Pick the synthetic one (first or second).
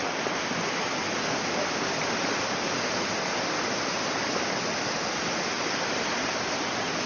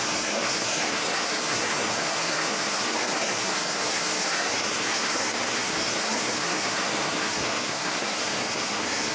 second